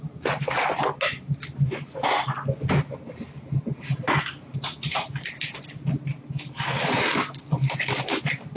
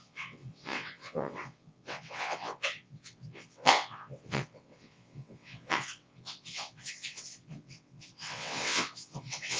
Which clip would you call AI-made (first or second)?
second